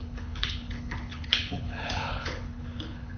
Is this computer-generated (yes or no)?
yes